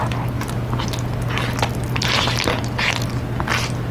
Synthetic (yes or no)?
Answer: no